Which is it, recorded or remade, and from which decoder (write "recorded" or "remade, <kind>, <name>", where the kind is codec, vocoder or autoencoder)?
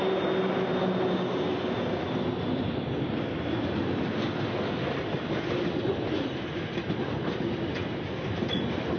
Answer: recorded